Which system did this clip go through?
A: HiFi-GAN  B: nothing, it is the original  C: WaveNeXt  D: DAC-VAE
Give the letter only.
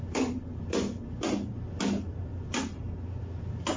B